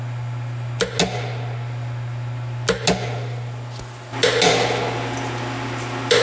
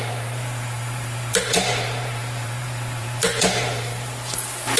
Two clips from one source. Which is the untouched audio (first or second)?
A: first